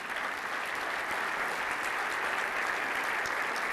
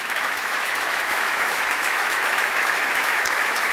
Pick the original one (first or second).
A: first